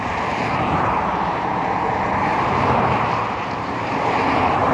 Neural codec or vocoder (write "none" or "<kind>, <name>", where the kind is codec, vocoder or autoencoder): vocoder, BigVGAN v2